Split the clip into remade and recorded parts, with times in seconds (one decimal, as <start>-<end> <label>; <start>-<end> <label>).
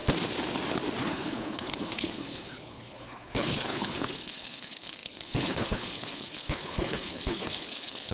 0.0-1.0 recorded; 1.0-8.1 remade